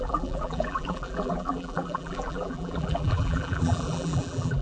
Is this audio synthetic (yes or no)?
yes